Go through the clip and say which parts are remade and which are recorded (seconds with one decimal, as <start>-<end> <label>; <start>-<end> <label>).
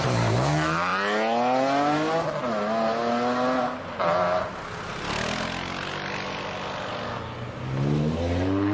0.0-8.7 recorded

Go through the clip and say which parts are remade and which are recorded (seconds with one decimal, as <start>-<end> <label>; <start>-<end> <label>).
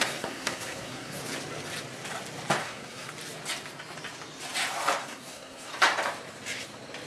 0.0-1.2 remade; 1.2-2.6 recorded; 2.6-3.1 remade; 3.1-5.0 recorded; 5.0-5.7 remade; 5.7-7.1 recorded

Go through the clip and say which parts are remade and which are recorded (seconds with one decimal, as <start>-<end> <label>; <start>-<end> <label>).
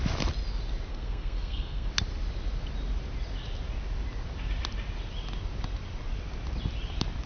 0.0-0.9 recorded; 0.9-1.9 remade; 1.9-7.3 recorded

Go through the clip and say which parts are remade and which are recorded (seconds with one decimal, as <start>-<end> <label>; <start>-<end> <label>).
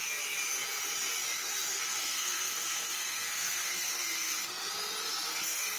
0.0-1.7 recorded; 1.7-4.7 remade; 4.7-5.3 recorded; 5.3-5.8 remade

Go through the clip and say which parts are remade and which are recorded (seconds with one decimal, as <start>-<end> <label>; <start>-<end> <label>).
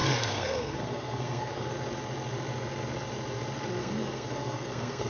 0.0-1.7 remade; 1.7-3.8 recorded; 3.8-5.1 remade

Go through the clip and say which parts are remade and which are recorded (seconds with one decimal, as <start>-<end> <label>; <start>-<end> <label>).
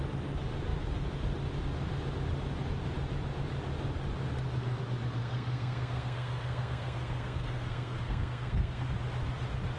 0.0-5.2 recorded; 5.2-8.9 remade; 8.9-9.8 recorded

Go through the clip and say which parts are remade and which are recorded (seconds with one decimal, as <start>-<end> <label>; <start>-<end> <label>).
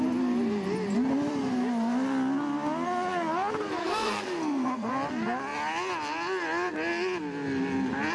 0.0-3.8 recorded; 3.8-4.9 remade; 4.9-8.1 recorded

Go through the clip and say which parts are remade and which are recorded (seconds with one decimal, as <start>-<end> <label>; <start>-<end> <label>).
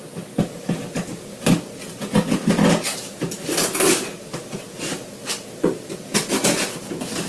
0.0-7.3 recorded